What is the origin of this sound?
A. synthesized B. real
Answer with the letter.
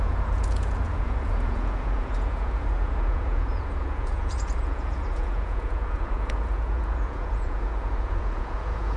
A